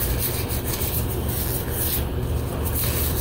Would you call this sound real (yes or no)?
yes